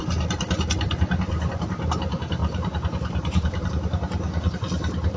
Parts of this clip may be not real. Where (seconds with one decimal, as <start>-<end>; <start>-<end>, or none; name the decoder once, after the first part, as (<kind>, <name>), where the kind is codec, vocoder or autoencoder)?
2.4-3.7 (vocoder, BigVGAN v2)